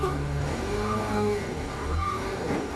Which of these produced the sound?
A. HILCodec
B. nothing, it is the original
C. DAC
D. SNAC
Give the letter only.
C